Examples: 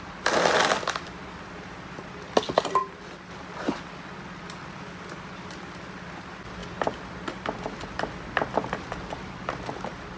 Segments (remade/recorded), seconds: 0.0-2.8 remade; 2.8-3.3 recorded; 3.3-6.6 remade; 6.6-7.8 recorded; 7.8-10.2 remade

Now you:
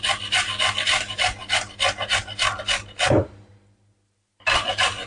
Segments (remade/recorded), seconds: 0.0-5.1 recorded